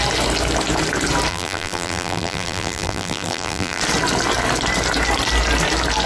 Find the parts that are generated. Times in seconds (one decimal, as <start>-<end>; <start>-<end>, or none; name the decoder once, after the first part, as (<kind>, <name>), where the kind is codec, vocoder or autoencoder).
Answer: 1.3-3.8 (vocoder, BigVGAN v2)